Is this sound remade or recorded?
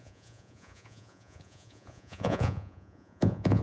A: remade